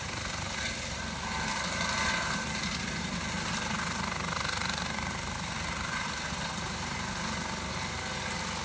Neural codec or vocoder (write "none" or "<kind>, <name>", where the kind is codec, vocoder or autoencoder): none